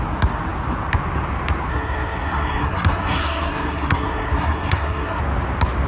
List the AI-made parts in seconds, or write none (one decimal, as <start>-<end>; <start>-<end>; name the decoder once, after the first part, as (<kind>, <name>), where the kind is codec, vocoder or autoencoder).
1.7-5.2 (codec, SNAC)